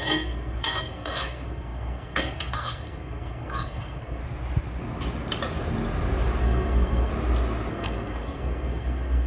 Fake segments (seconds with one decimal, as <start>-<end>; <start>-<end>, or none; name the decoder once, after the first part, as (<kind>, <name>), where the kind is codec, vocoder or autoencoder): 0.0-4.2 (codec, SNAC); 6.4-7.1; 7.7-9.3